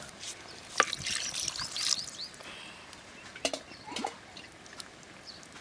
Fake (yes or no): no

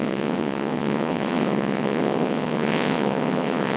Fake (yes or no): yes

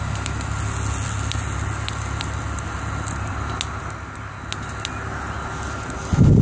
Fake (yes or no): no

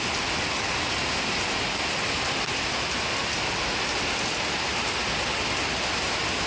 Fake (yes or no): no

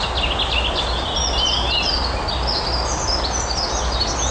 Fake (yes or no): no